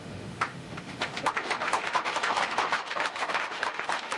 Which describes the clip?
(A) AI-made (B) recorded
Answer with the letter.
A